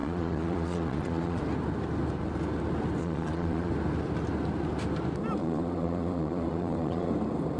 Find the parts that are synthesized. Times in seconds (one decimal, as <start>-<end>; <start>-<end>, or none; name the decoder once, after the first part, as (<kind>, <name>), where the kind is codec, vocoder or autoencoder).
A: 0.0-1.4 (vocoder, Vocos); 3.0-3.7; 5.4-7.1